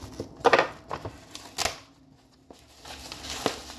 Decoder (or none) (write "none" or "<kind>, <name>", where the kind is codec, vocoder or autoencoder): none